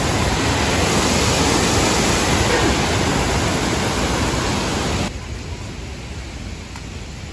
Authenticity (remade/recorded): recorded